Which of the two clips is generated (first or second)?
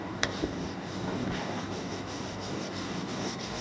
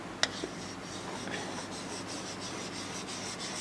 first